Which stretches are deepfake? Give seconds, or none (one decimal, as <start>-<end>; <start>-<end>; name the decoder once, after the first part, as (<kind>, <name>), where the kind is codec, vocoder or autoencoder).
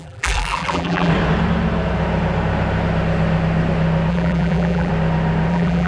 0.0-1.1 (vocoder, BigVGAN v2); 4.1-4.9; 5.5-5.9